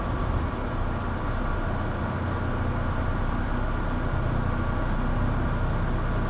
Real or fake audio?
real